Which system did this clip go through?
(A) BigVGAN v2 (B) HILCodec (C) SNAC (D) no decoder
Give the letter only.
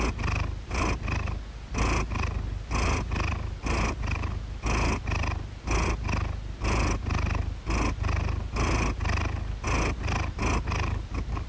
D